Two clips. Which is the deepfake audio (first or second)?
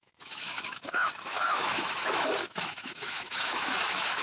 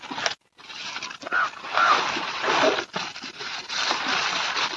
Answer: first